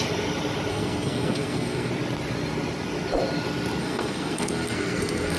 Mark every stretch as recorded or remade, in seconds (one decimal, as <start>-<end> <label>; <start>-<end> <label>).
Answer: 0.0-0.7 recorded; 0.7-1.9 remade; 1.9-3.8 recorded; 3.8-5.4 remade